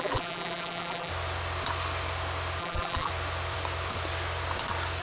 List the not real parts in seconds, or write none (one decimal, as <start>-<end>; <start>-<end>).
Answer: 0.0-1.1; 2.6-3.1